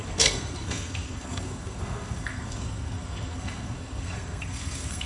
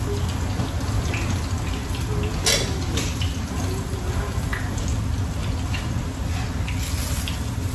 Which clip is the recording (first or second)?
second